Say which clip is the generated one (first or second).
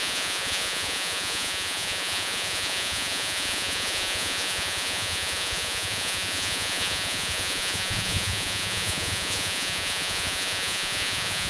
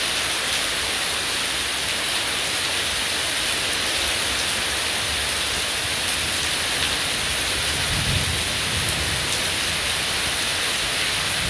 first